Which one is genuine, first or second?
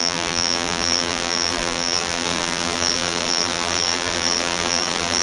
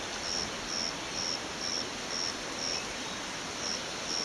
second